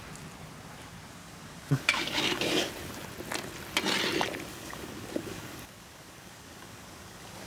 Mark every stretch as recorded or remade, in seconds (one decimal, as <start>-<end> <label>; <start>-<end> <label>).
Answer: 0.0-1.2 recorded; 1.2-2.7 remade; 2.7-4.5 recorded; 4.5-7.5 remade